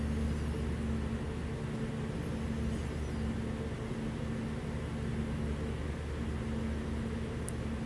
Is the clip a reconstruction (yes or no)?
no